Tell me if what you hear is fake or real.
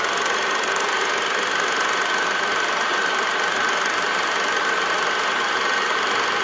real